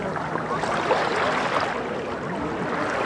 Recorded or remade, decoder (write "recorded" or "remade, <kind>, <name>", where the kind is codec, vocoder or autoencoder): recorded